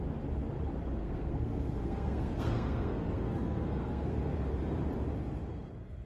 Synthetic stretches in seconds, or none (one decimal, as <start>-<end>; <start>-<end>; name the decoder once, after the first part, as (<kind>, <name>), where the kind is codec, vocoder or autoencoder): 1.0-4.2 (codec, SNAC)